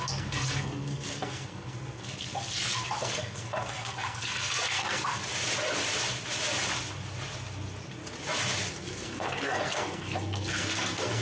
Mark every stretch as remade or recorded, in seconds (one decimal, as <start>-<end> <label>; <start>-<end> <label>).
0.0-5.2 remade; 5.2-8.7 recorded; 8.7-11.2 remade